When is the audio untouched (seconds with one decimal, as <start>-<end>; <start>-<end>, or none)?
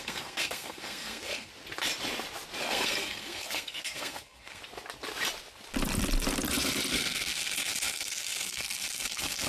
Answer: 1.5-2.6; 4.6-6.9